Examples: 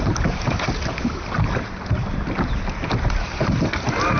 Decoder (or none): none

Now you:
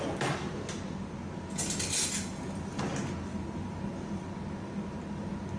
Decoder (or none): none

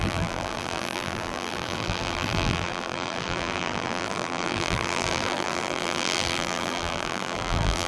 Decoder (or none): vocoder, BigVGAN v2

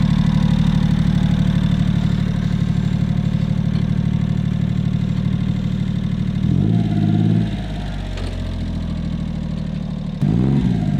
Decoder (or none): none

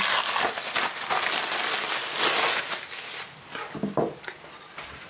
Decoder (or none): none